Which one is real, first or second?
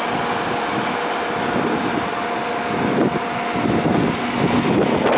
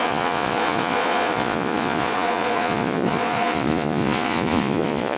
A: first